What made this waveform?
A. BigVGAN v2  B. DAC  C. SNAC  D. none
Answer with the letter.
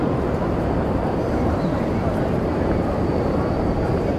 A